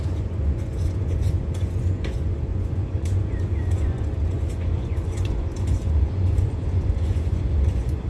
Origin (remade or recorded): remade